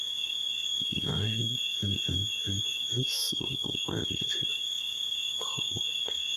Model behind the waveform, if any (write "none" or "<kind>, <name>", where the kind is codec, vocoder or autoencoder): autoencoder, DAC-VAE